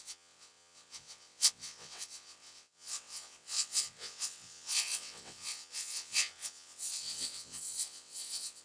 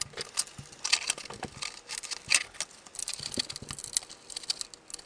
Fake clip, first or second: first